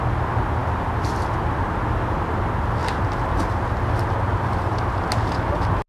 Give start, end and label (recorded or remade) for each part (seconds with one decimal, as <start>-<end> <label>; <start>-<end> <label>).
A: 0.0-5.9 recorded